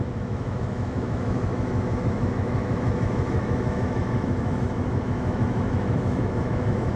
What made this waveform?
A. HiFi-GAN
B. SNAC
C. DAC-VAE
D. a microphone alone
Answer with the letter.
C